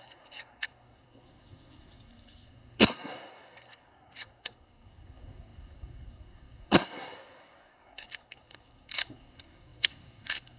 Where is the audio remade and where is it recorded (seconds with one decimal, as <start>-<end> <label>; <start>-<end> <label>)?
0.0-10.6 remade